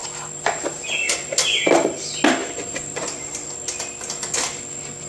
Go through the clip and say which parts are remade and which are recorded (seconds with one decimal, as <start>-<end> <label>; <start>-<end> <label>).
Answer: 0.0-5.1 recorded

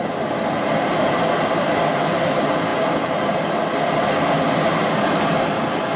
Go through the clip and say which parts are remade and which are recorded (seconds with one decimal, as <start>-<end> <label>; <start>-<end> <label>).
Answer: 0.0-6.0 remade

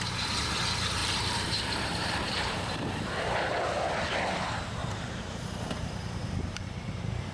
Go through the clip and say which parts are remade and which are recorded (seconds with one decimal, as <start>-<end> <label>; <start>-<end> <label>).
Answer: 0.0-1.0 recorded; 1.0-3.0 remade; 3.0-4.8 recorded; 4.8-7.3 remade

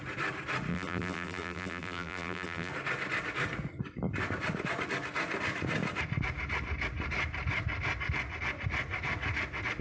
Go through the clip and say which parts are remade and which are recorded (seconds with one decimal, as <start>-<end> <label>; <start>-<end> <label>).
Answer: 0.0-0.7 recorded; 0.7-2.7 remade; 2.7-9.8 recorded

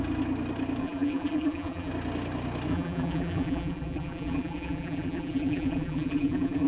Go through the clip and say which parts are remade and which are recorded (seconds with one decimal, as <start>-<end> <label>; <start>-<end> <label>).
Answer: 0.0-0.8 recorded; 0.8-1.9 remade; 1.9-2.7 recorded; 2.7-6.7 remade

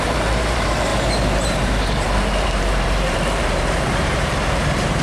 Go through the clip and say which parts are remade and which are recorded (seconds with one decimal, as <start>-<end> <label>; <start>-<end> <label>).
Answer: 0.0-5.0 remade

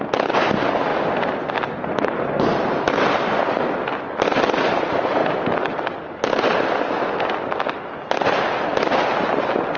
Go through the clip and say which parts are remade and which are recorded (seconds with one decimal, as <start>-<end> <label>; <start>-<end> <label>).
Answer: 0.0-8.7 recorded; 8.7-9.4 remade; 9.4-9.8 recorded